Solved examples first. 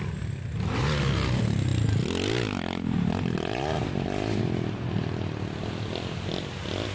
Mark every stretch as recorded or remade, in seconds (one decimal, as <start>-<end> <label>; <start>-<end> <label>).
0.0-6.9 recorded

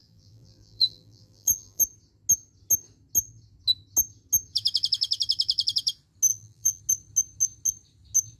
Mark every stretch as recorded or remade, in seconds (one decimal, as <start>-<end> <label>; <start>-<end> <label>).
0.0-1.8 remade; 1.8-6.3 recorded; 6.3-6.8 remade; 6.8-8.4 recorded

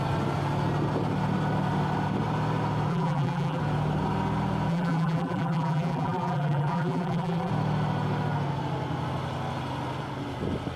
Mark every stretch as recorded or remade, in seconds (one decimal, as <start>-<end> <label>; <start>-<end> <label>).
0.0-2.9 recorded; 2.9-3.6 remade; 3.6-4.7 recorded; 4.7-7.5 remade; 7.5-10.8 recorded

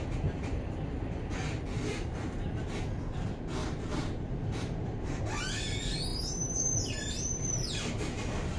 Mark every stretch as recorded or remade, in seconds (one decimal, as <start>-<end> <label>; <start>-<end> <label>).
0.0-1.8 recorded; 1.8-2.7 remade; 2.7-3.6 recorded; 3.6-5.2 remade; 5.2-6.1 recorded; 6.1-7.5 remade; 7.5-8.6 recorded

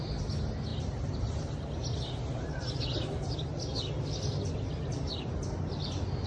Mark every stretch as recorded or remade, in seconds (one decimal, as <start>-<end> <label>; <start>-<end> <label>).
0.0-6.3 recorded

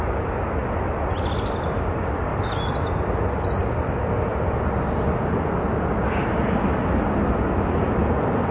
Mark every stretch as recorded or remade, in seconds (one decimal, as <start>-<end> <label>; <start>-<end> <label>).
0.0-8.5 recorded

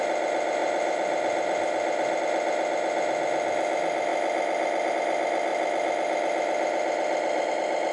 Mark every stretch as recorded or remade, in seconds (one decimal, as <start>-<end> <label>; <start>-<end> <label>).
0.0-0.6 recorded; 0.6-2.2 remade; 2.2-5.5 recorded; 5.5-7.5 remade; 7.5-7.9 recorded

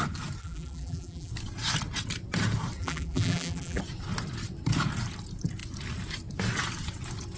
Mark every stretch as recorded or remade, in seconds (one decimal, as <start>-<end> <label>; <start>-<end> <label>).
0.0-0.4 recorded; 0.4-1.3 remade; 1.3-2.8 recorded; 2.8-3.8 remade; 3.8-7.4 recorded